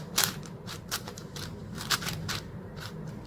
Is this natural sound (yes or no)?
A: no